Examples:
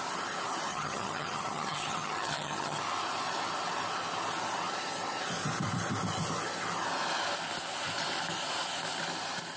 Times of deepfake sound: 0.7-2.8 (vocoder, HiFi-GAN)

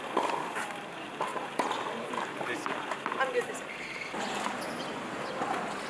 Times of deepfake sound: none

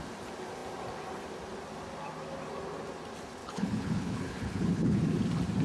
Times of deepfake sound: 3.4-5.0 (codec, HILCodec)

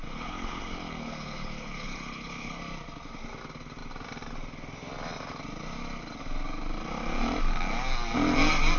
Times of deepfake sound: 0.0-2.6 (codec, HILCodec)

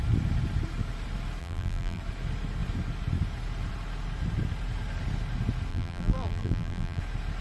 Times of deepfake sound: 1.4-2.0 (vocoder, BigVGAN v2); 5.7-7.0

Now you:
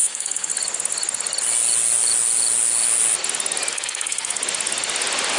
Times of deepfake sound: 0.0-0.5 (codec, SNAC); 3.7-4.4